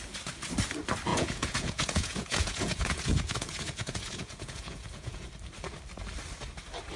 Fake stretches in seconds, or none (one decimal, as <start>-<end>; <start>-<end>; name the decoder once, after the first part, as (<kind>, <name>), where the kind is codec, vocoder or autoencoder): 1.1-5.3 (vocoder, Vocos)